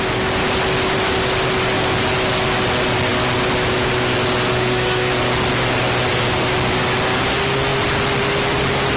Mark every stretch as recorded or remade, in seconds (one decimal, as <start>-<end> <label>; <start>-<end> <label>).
0.0-4.5 recorded; 4.5-5.1 remade; 5.1-9.0 recorded